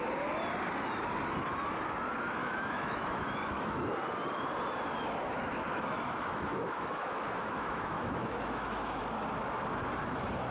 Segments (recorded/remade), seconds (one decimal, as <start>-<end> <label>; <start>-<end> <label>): 0.0-2.4 recorded; 2.4-3.9 remade; 3.9-5.7 recorded; 5.7-9.0 remade; 9.0-10.5 recorded